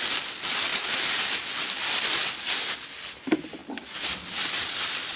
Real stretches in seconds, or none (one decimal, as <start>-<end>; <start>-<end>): 0.0-5.2